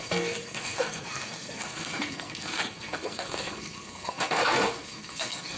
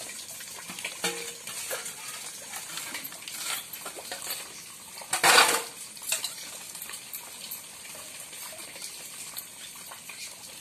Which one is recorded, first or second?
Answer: second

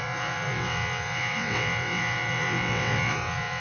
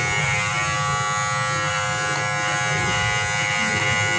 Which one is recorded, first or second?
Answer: second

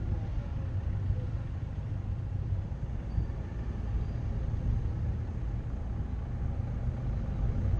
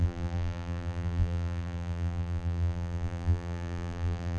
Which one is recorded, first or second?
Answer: first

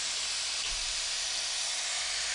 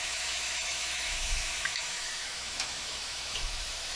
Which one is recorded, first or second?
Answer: first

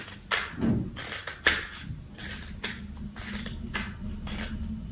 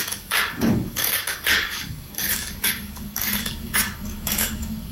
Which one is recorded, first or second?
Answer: first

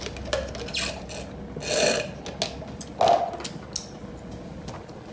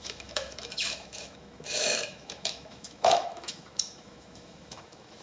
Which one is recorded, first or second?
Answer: first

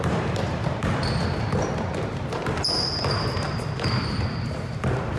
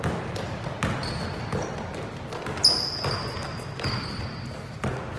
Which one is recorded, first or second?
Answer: second